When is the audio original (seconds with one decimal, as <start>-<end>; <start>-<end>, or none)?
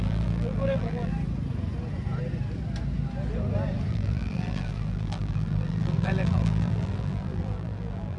1.1-3.9